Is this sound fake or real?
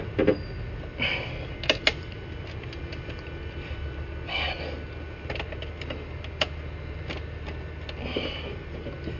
real